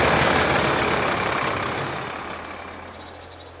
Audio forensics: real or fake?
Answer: real